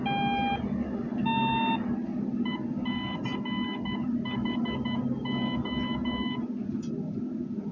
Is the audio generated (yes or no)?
no